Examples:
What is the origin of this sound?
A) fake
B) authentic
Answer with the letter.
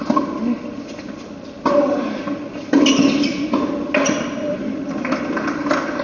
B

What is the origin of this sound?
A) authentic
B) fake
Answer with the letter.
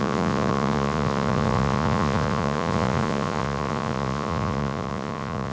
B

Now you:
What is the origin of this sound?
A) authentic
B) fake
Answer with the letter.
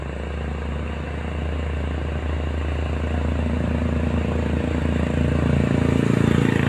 A